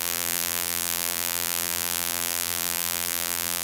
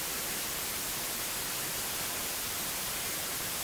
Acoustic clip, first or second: second